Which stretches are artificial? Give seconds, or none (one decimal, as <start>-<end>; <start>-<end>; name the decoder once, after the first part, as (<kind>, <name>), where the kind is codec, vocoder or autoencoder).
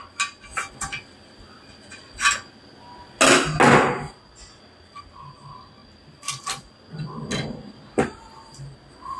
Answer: none